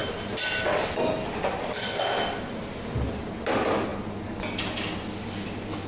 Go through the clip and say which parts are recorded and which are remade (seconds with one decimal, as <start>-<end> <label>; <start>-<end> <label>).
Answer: 0.0-5.9 recorded